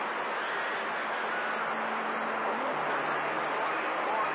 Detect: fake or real real